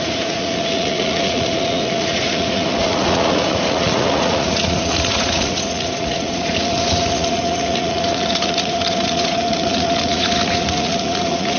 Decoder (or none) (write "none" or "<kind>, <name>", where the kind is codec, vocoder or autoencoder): vocoder, Vocos